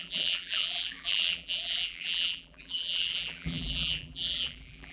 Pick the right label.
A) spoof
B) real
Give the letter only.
A